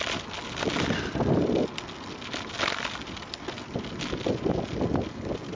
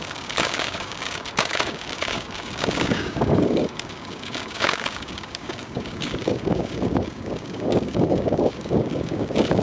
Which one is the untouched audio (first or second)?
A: first